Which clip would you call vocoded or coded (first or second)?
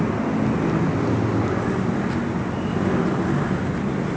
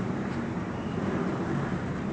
second